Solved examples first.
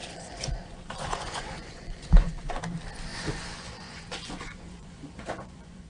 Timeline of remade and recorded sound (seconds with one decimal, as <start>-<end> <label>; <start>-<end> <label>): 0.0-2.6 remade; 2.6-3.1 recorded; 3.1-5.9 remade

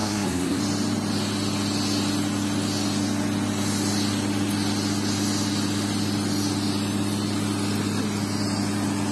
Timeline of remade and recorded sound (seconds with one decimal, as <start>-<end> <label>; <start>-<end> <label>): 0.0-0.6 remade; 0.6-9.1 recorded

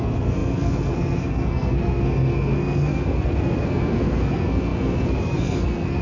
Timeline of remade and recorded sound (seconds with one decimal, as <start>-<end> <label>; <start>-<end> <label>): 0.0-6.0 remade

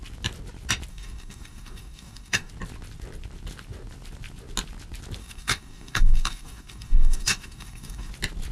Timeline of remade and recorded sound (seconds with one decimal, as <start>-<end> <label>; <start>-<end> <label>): 0.0-0.9 recorded; 0.9-2.5 remade; 2.5-5.2 recorded; 5.2-8.1 remade; 8.1-8.5 recorded

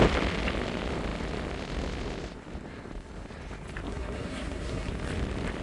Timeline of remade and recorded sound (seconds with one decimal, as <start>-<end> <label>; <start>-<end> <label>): 0.0-3.9 recorded; 3.9-4.9 remade; 4.9-5.6 recorded

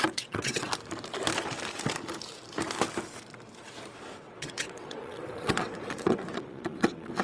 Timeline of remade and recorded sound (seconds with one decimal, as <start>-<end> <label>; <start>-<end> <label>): 0.0-0.7 remade; 0.7-4.2 recorded; 4.2-7.2 remade

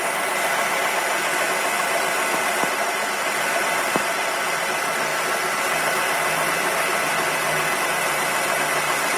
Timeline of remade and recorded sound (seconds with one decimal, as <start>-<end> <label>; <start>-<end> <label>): 0.0-9.2 recorded